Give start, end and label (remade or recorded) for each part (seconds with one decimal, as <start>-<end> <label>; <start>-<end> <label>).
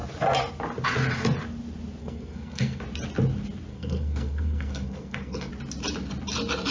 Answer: 0.0-2.0 recorded; 2.0-2.8 remade; 2.8-3.7 recorded; 3.7-5.5 remade; 5.5-6.7 recorded